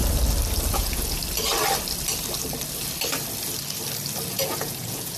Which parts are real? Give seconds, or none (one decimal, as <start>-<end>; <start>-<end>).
0.0-0.7; 1.2-4.3